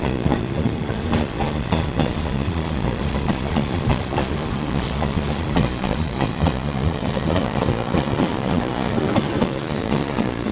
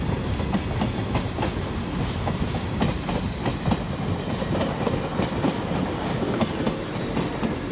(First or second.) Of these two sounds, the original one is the second